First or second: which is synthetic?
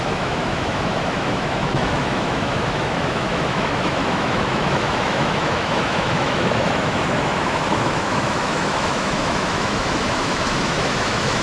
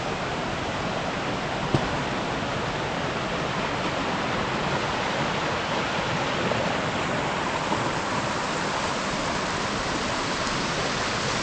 first